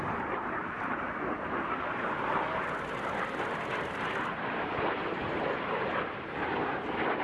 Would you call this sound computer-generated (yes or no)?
no